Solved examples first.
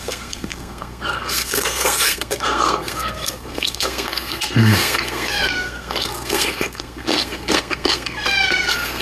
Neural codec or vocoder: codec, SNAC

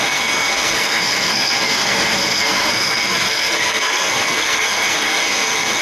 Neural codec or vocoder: codec, SNAC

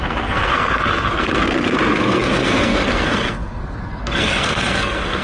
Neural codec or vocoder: codec, SNAC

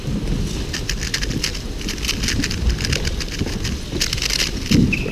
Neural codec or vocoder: none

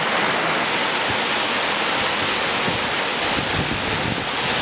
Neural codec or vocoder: none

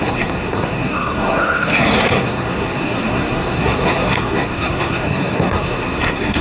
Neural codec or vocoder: codec, SNAC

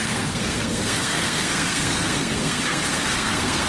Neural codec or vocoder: codec, SNAC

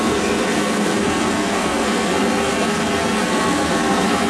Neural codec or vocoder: codec, SNAC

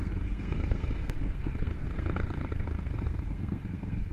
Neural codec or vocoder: codec, SNAC